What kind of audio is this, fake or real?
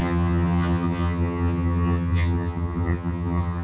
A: fake